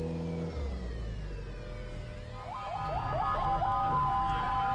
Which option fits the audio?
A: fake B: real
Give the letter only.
B